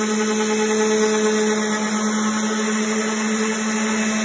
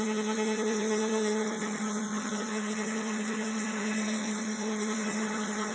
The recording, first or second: first